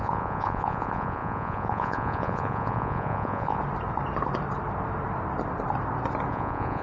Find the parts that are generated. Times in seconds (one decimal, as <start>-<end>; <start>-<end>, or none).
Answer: 0.0-3.6; 6.3-6.8